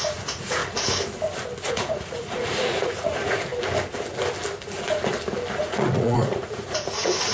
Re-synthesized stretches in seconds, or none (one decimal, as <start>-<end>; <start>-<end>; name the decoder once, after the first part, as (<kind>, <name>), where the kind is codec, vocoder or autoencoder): 0.0-0.6 (vocoder, Vocos); 1.7-3.5; 5.5-7.3

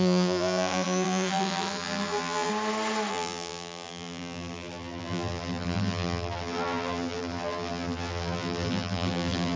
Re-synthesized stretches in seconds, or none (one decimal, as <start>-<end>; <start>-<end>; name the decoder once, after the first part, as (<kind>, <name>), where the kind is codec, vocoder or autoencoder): 0.0-2.5 (vocoder, BigVGAN v2); 3.1-9.6